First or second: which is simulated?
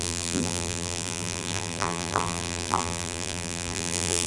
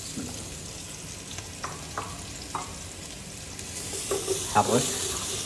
first